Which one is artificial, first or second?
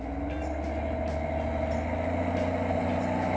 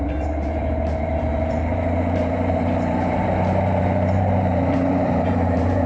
second